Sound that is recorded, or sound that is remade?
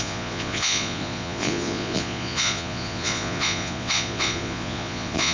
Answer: remade